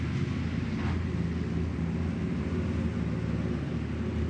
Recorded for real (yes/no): yes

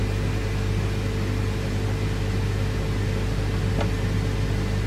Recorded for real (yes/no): yes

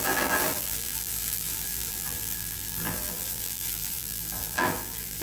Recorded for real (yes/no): no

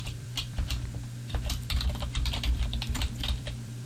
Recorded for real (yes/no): no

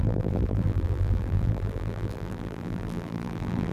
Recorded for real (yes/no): no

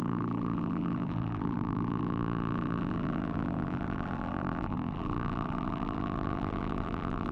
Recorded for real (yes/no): no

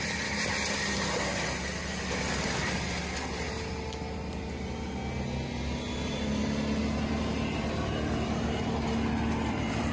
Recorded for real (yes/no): yes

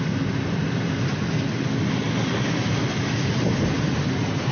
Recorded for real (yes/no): yes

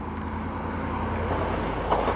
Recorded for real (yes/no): yes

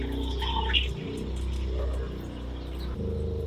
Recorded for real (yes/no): yes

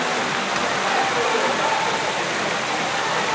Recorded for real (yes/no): yes